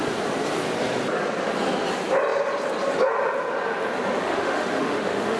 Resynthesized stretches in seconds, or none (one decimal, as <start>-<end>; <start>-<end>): 4.2-5.4